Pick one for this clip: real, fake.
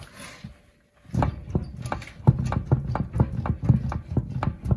real